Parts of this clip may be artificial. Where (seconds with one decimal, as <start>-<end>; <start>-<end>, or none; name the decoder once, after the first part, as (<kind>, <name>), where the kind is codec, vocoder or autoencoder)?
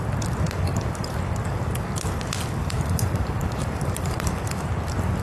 0.7-1.2 (vocoder, BigVGAN v2); 2.6-4.3